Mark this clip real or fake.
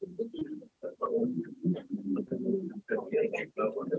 real